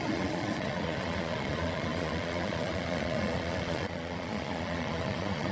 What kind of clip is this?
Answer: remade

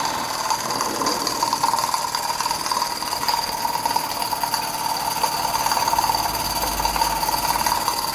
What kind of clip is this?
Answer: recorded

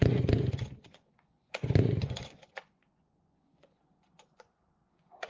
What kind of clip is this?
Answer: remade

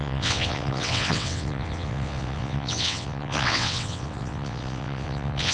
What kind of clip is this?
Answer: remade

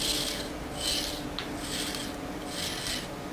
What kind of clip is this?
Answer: recorded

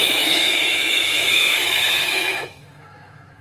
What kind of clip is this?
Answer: remade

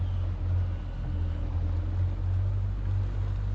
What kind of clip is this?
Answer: recorded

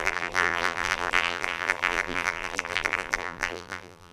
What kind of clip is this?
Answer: remade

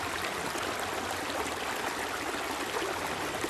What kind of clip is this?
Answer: recorded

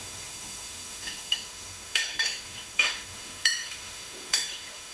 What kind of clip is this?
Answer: remade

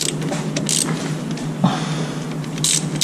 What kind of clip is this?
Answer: recorded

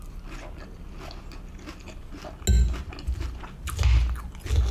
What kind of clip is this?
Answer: recorded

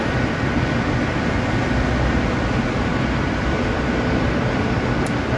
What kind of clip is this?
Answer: remade